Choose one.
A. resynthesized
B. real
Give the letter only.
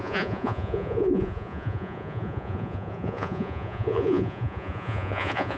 A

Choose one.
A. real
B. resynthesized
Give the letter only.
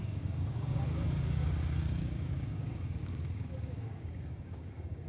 B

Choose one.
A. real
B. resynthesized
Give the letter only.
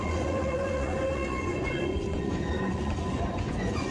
B